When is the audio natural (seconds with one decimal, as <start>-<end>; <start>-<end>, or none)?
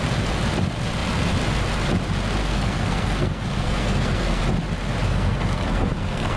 0.0-2.4; 4.4-5.1